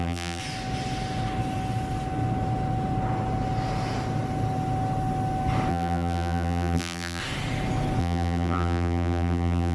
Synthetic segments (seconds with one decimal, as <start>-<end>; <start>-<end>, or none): 0.0-0.4; 5.7-7.2; 8.0-9.7